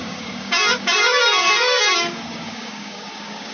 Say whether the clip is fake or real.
fake